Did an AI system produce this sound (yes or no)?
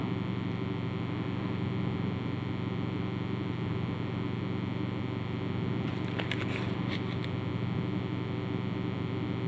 no